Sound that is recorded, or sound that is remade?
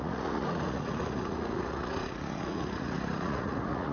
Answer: remade